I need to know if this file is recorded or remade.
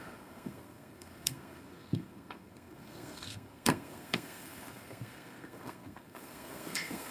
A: remade